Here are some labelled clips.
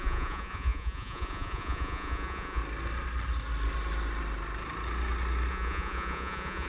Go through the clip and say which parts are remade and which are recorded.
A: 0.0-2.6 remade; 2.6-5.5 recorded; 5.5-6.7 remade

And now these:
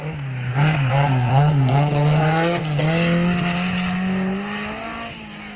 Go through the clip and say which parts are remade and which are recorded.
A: 0.0-0.5 recorded; 0.5-2.8 remade; 2.8-5.6 recorded

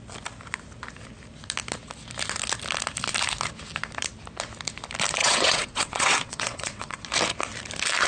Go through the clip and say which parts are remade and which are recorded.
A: 0.0-5.2 recorded; 5.2-7.0 remade; 7.0-8.1 recorded

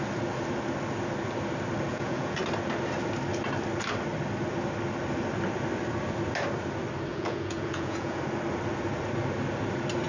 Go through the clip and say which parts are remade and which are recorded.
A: 0.0-1.9 recorded; 1.9-2.4 remade; 2.4-7.1 recorded; 7.1-8.2 remade; 8.2-10.1 recorded

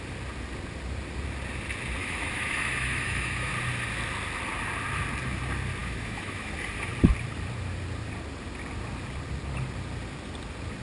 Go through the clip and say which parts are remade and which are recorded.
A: 0.0-2.0 recorded; 2.0-3.5 remade; 3.5-5.8 recorded; 5.8-6.5 remade; 6.5-10.8 recorded

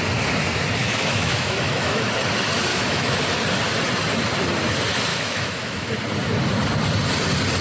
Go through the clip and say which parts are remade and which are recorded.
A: 0.0-0.8 recorded; 0.8-2.1 remade; 2.1-2.7 recorded; 2.7-3.2 remade; 3.2-5.1 recorded; 5.1-5.9 remade; 5.9-7.6 recorded